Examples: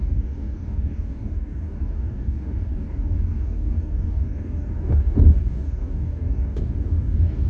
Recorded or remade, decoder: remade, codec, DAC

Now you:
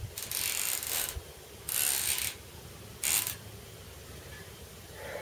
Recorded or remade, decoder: recorded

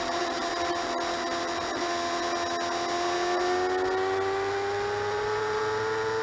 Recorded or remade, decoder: recorded